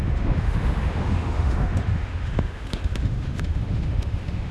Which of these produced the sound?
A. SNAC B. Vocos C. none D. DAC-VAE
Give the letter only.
D